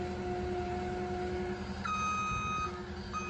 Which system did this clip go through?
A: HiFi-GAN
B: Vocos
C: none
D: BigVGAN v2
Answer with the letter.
C